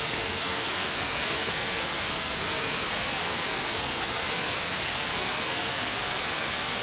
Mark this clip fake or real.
fake